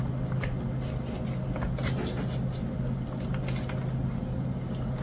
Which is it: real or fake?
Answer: real